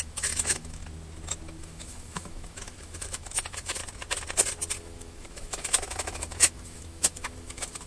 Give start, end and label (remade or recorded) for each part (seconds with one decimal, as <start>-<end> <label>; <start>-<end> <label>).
0.0-0.8 remade; 0.8-1.6 recorded; 1.6-3.8 remade; 3.8-4.8 recorded; 4.8-7.9 remade